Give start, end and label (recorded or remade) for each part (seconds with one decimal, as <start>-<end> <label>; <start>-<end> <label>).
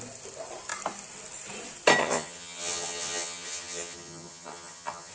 0.0-2.0 recorded; 2.0-5.1 remade